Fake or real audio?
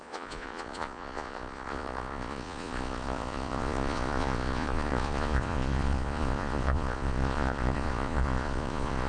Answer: fake